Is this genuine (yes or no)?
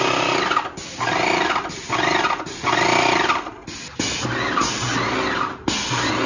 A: yes